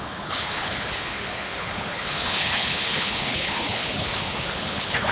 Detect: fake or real fake